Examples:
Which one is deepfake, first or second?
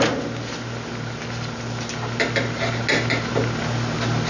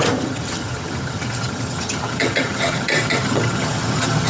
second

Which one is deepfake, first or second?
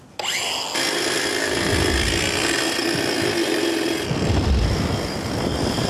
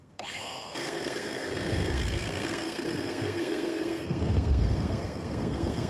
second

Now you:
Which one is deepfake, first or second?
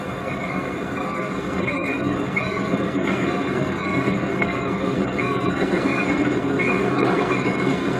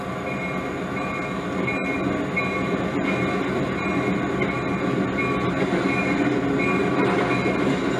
first